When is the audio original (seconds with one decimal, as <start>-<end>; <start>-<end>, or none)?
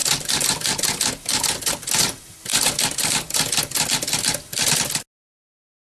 0.0-5.8